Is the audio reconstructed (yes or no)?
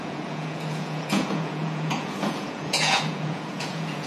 yes